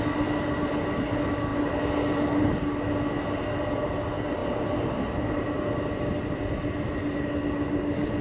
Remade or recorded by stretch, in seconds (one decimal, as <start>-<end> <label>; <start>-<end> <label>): 0.0-8.2 recorded